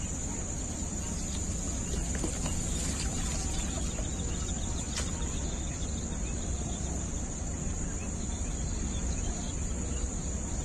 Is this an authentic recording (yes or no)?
yes